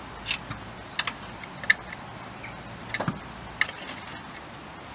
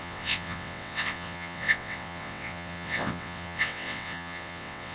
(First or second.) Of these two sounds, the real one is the first